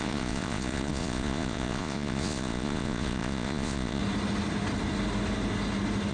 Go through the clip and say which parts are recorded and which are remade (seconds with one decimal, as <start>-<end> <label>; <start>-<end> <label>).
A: 0.0-4.0 remade; 4.0-6.1 recorded